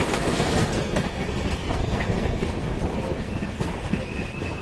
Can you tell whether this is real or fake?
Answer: fake